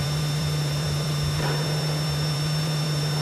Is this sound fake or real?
fake